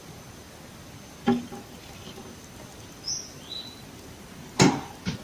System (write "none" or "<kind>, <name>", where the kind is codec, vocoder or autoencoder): none